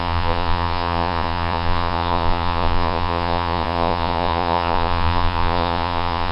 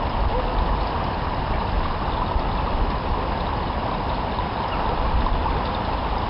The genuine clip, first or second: second